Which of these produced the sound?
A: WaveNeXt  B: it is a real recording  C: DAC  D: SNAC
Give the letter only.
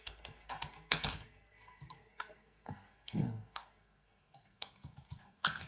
D